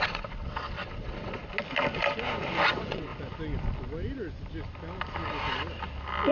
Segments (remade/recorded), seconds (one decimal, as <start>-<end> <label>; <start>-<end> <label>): 0.0-1.4 remade; 1.4-2.7 recorded; 2.7-3.1 remade; 3.1-6.3 recorded